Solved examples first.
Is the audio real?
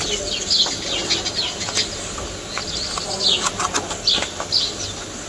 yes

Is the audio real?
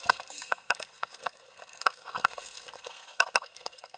no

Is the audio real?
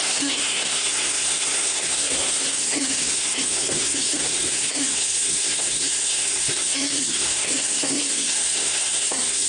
no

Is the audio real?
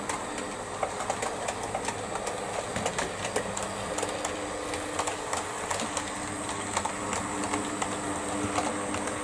yes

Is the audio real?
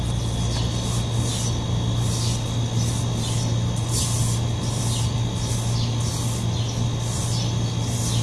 yes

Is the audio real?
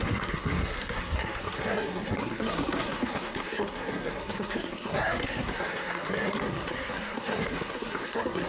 no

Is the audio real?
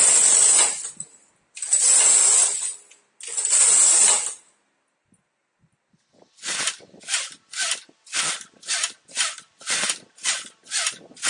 yes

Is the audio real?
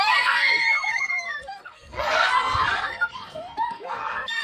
no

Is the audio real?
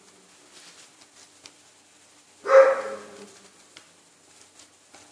yes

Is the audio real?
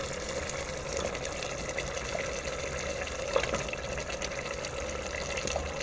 yes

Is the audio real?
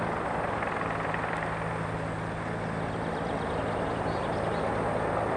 yes